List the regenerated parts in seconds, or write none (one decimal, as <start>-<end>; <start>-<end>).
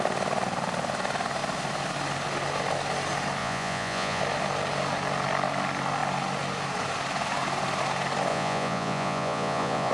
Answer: 3.4-4.2; 8.3-9.9